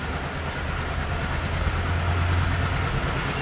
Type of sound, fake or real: real